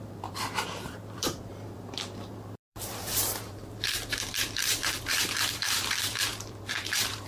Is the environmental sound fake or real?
fake